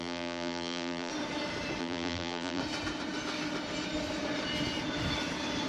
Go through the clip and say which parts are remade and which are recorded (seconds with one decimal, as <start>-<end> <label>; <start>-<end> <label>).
0.0-1.1 remade; 1.1-1.8 recorded; 1.8-2.6 remade; 2.6-5.7 recorded

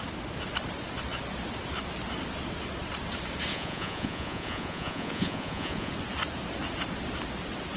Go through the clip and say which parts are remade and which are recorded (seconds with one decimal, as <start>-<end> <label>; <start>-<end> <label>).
0.0-3.5 recorded; 3.5-5.9 remade; 5.9-7.8 recorded